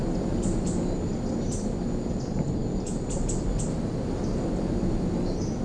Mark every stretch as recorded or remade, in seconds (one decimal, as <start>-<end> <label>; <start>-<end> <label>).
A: 0.0-5.6 recorded